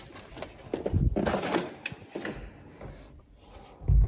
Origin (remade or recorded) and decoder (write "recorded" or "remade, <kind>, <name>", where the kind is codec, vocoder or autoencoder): recorded